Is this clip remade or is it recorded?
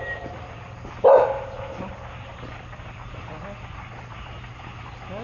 recorded